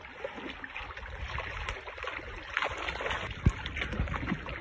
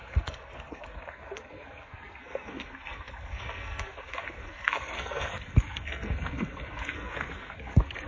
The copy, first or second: second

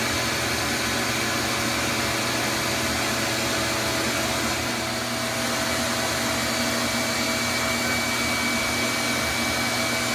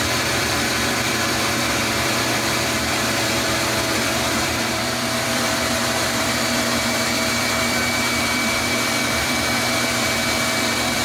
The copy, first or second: second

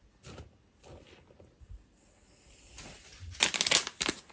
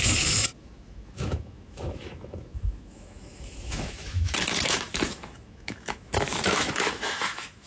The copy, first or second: second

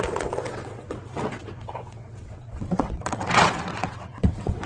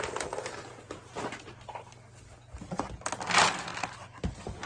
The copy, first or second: first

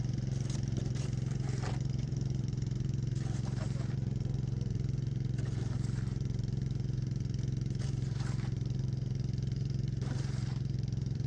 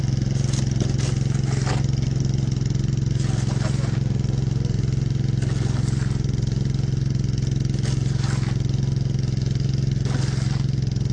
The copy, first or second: first